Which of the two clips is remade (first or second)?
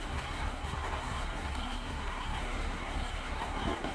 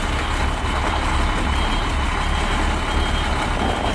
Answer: first